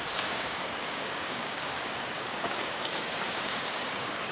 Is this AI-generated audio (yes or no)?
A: yes